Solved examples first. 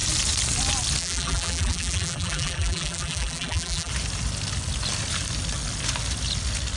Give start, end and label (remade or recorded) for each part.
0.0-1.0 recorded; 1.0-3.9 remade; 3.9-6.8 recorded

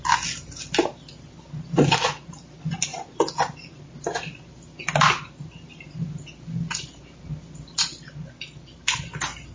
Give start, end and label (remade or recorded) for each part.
0.0-9.5 recorded

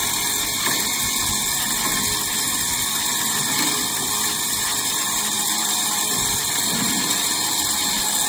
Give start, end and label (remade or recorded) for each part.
0.0-2.7 recorded; 2.7-6.6 remade; 6.6-8.3 recorded

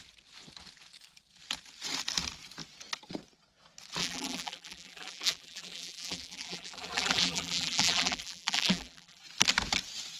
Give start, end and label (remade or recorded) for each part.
0.0-4.0 recorded; 4.0-9.2 remade; 9.2-10.2 recorded

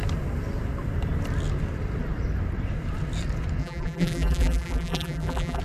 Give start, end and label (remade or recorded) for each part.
0.0-3.6 recorded; 3.6-5.6 remade

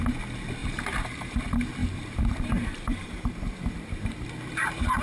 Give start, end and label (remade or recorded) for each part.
0.0-0.6 recorded; 0.6-1.4 remade; 1.4-1.8 recorded; 1.8-5.0 remade

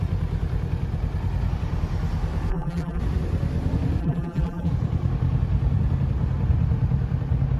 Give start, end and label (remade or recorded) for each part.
0.0-2.5 recorded; 2.5-3.0 remade; 3.0-4.0 recorded; 4.0-4.7 remade; 4.7-7.6 recorded

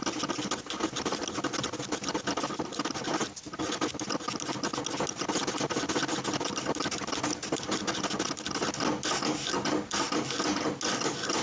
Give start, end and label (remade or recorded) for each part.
0.0-11.4 recorded